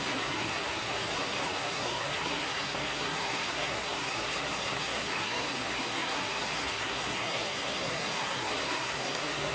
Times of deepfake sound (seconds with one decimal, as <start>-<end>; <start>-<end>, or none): 0.0-9.5